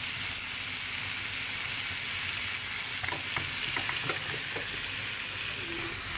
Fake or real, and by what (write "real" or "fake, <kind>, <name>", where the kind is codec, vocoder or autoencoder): real